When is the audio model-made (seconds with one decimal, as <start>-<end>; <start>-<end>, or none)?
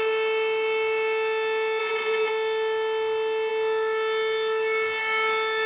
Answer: 1.8-2.3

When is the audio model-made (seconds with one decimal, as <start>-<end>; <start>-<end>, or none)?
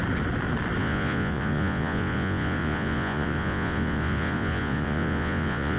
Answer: 0.8-5.8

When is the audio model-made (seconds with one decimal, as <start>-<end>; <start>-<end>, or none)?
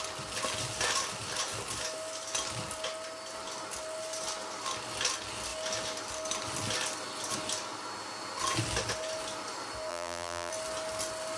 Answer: 9.9-10.5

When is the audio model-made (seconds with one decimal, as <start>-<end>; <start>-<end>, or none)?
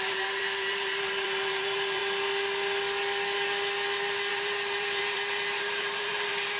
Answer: 0.0-2.0; 4.3-6.6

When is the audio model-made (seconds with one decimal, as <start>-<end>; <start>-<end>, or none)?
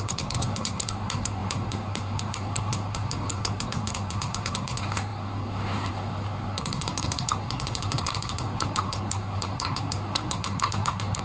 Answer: 0.0-11.2